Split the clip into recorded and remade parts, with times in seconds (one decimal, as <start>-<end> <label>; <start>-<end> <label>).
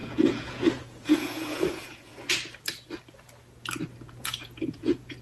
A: 0.0-2.1 remade; 2.1-4.1 recorded; 4.1-5.2 remade